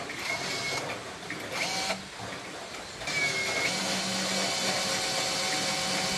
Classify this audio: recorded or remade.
recorded